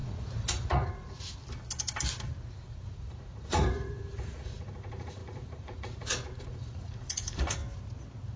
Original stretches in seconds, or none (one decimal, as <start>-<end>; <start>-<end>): 1.4-2.5; 7.6-8.4